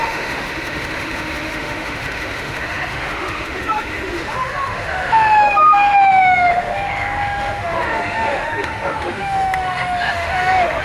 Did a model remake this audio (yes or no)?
yes